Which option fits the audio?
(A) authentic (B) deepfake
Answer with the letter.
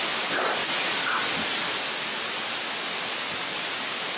A